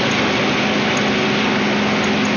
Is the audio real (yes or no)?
yes